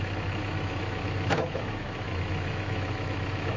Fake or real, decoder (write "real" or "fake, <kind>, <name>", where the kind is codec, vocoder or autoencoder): fake, autoencoder, DAC-VAE